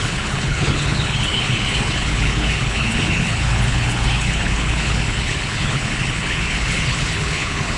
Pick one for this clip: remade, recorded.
remade